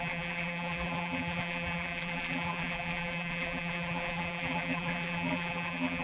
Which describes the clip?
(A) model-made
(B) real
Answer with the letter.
A